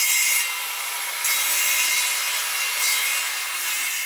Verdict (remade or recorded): recorded